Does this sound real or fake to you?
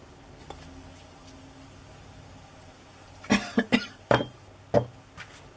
real